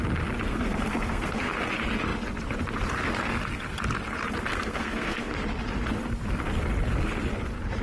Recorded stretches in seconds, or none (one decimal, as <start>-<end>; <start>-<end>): 0.0-0.4; 1.6-4.5; 5.3-7.8